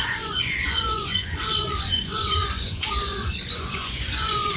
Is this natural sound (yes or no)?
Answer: no